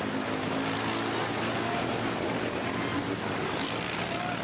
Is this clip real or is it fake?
real